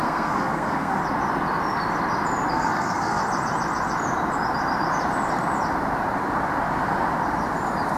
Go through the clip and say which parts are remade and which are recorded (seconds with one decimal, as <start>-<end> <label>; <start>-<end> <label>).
0.0-1.0 remade; 1.0-2.5 recorded; 2.5-3.2 remade; 3.2-8.0 recorded